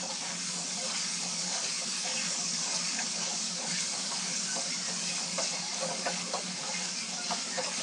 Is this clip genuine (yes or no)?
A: no